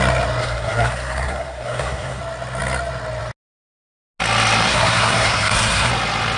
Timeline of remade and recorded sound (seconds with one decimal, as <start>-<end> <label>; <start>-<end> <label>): 0.0-0.4 recorded; 0.4-2.2 remade; 2.2-4.7 recorded; 4.7-5.9 remade; 5.9-6.4 recorded